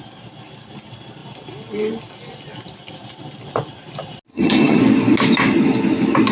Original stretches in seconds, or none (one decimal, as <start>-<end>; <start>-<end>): 0.0-4.3; 4.8-6.3